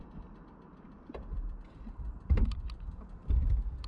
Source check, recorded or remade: remade